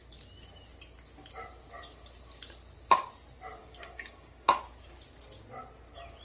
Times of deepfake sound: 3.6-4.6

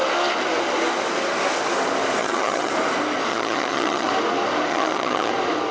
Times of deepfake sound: 2.2-2.7; 3.3-4.1; 4.7-5.3

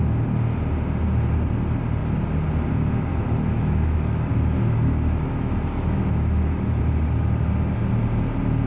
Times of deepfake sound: 3.1-6.8

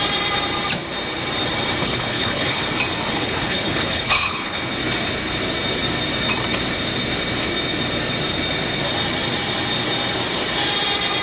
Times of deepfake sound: 1.8-2.6; 3.1-4.7

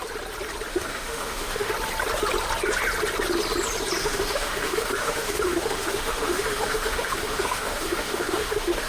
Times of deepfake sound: 0.7-1.7; 4.0-8.9